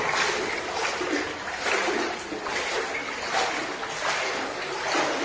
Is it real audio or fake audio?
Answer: real